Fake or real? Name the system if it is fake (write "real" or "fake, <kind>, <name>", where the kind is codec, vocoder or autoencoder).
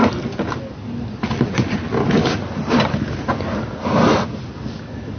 real